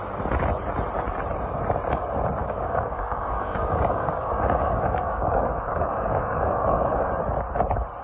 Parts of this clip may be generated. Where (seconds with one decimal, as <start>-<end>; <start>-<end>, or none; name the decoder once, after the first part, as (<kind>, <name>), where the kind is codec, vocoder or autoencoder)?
2.4-7.1 (codec, DAC)